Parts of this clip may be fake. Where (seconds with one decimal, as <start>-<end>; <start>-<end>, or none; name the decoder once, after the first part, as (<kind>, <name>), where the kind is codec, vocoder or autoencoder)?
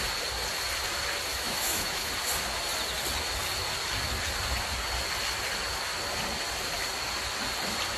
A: 1.3-2.1 (autoencoder, DAC-VAE)